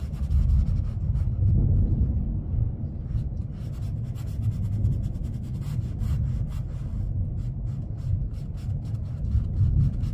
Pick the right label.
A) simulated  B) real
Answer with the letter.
B